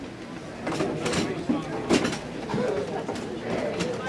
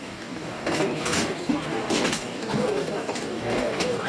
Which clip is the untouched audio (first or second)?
first